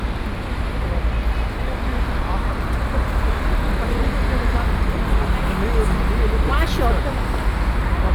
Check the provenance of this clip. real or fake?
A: real